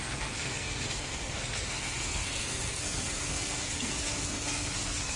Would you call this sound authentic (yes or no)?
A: no